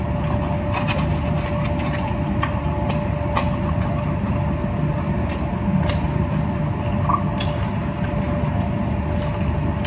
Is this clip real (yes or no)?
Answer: yes